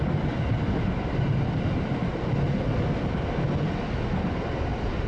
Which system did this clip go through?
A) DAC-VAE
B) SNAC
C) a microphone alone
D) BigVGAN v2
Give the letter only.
C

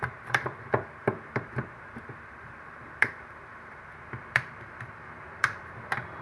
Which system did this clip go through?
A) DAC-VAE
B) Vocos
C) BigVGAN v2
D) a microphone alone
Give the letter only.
C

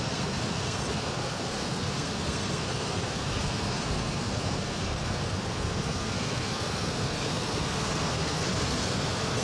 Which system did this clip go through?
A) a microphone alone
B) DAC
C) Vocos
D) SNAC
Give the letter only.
D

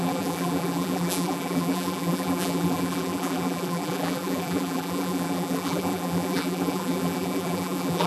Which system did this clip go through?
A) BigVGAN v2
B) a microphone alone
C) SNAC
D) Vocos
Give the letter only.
A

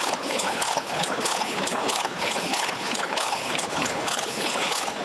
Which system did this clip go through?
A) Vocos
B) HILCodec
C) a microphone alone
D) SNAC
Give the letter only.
B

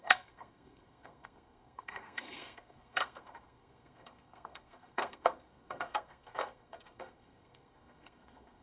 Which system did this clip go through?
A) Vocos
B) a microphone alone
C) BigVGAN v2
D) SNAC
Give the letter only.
D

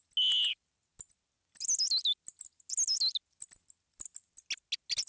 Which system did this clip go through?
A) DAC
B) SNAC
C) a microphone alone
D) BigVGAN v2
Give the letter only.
C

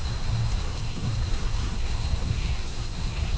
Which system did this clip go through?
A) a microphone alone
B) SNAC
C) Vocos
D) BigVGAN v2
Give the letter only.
B